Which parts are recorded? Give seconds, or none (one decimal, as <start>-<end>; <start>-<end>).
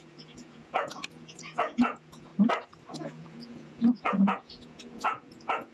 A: 2.3-2.9